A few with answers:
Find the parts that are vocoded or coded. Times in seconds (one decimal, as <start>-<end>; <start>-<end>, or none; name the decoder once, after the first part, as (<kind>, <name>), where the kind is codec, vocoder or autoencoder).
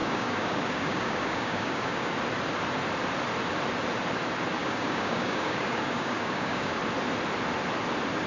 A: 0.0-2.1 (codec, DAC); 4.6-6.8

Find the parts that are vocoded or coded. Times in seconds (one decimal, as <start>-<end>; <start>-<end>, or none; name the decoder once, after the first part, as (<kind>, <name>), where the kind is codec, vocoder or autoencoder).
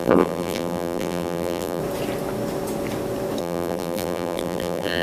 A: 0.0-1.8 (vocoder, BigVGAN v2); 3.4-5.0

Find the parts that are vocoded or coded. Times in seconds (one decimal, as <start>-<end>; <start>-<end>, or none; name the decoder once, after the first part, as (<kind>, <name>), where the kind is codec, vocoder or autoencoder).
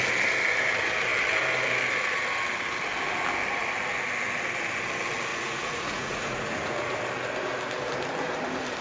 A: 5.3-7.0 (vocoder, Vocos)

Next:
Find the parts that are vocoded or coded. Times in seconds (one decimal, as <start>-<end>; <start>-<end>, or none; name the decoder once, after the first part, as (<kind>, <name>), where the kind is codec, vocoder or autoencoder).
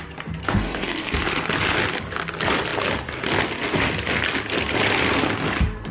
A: 0.4-1.1 (codec, SNAC)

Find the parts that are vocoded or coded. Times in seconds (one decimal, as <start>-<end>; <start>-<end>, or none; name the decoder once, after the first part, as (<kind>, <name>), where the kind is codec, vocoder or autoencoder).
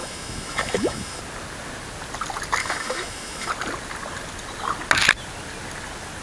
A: 0.0-1.2 (autoencoder, DAC-VAE); 2.6-3.5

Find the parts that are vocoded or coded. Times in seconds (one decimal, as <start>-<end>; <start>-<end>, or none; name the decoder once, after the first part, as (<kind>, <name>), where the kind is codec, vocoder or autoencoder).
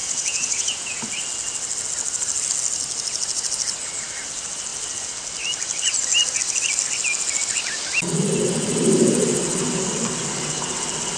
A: 0.0-1.0 (vocoder, Vocos)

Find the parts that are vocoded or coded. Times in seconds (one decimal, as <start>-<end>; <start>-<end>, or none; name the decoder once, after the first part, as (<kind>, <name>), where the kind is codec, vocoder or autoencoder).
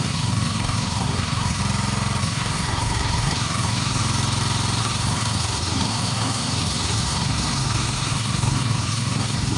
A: 0.0-1.6 (codec, SNAC); 2.2-4.0; 4.8-9.6